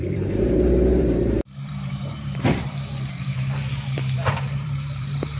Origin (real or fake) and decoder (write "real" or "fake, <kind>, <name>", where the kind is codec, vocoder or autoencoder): fake, vocoder, BigVGAN v2